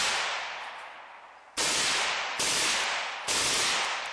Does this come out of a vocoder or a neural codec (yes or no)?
no